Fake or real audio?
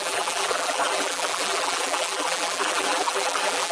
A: fake